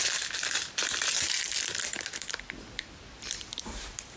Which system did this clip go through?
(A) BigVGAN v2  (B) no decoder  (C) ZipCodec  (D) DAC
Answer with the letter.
A